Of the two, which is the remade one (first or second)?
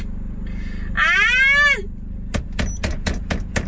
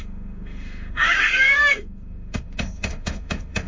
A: second